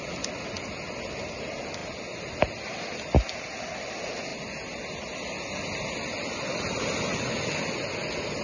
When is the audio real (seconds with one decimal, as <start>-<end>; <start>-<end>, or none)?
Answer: 0.0-8.4